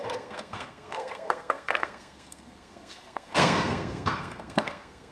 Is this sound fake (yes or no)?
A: yes